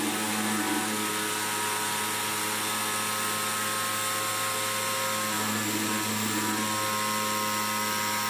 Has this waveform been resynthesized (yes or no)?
no